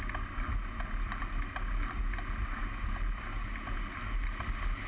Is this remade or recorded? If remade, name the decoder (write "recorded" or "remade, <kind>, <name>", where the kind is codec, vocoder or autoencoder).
recorded